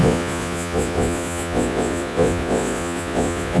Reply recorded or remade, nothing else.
remade